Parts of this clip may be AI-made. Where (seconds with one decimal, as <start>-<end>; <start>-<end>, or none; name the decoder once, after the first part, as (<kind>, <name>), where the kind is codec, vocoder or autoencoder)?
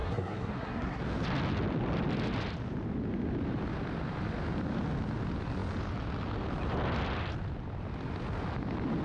0.0-1.0 (codec, SNAC)